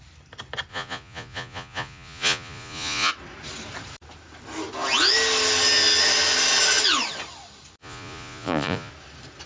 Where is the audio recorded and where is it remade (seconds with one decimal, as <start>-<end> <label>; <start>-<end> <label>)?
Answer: 0.0-0.7 recorded; 0.7-3.1 remade; 3.1-7.8 recorded; 7.8-8.9 remade; 8.9-9.5 recorded